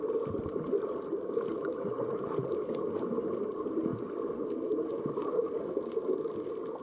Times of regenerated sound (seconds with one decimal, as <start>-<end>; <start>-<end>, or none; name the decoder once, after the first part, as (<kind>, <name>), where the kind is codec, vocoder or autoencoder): none